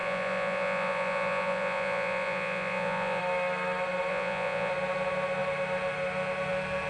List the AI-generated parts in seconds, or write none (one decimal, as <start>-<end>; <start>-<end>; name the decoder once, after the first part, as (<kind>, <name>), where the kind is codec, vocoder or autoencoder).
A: 0.0-3.2 (vocoder, Vocos); 4.1-4.7